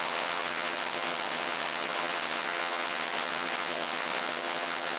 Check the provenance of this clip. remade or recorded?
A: remade